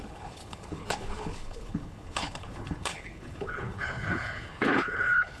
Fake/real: fake